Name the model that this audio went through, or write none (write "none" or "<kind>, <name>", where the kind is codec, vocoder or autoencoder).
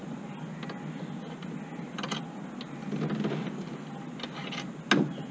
none